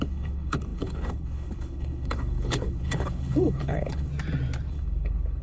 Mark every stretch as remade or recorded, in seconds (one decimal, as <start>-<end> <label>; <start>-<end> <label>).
0.0-4.1 remade; 4.1-4.7 recorded; 4.7-5.4 remade